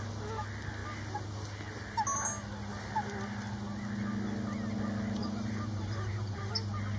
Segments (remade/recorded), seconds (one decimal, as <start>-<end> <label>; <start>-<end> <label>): 0.0-5.2 recorded; 5.2-6.5 remade; 6.5-7.0 recorded